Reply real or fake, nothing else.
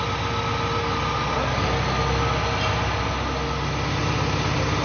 real